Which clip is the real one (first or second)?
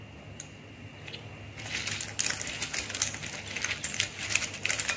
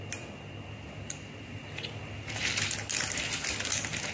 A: first